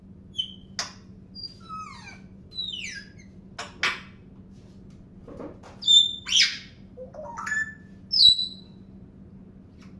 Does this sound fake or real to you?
real